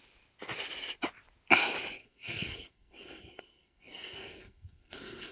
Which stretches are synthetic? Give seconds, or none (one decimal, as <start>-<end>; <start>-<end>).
2.0-5.3